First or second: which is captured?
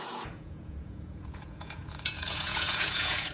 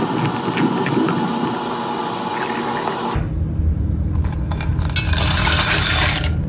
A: second